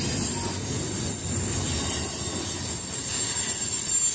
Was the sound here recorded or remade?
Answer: recorded